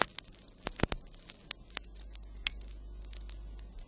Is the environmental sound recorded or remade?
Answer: recorded